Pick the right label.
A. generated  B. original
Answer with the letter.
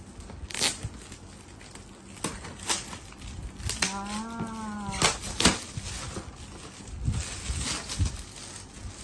B